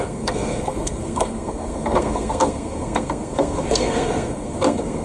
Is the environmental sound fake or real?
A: fake